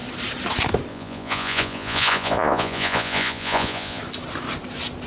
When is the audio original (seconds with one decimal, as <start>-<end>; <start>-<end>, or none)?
0.0-0.9; 4.0-5.1